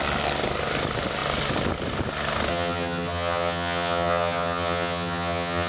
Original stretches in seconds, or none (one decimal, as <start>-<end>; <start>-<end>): 0.0-2.5